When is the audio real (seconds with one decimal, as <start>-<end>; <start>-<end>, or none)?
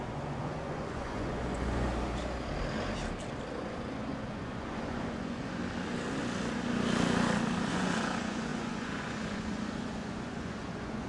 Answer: 1.9-3.6; 5.6-7.7